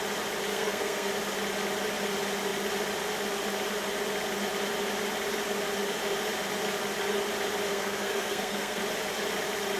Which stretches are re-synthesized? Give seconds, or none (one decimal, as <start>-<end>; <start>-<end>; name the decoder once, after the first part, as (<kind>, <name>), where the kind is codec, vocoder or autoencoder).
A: 0.5-1.1 (codec, SNAC); 7.7-8.8